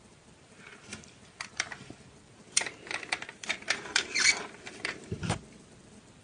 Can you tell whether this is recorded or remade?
remade